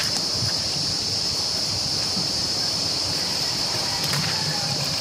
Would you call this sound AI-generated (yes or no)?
yes